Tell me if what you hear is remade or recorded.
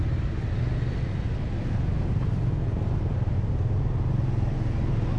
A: recorded